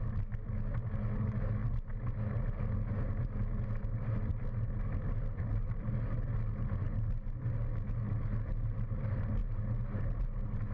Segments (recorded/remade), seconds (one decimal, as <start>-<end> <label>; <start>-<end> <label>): 0.0-10.7 recorded